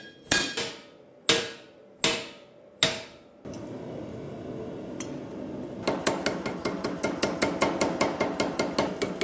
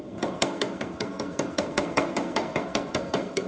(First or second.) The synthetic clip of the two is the second